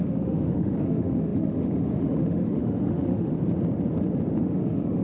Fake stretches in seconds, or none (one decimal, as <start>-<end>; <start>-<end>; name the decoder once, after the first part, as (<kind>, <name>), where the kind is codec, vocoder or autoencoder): 0.0-3.3 (autoencoder, DAC-VAE); 4.4-5.0